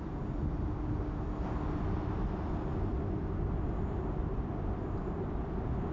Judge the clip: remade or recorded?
recorded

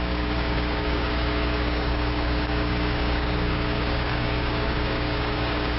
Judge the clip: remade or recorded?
remade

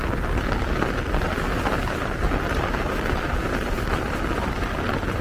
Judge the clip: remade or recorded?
recorded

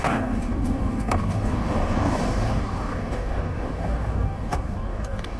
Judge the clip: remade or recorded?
remade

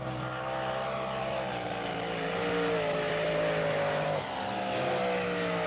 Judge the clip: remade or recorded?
recorded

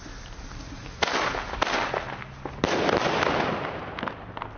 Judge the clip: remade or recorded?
recorded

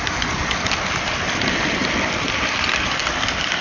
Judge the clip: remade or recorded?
recorded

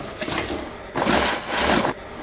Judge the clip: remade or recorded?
recorded